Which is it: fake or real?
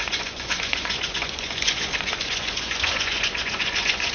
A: fake